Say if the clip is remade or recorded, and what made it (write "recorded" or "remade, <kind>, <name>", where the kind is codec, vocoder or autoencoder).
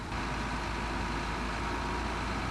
recorded